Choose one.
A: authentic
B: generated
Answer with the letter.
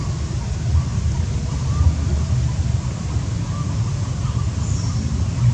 A